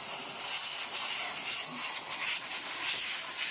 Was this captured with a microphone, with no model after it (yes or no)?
yes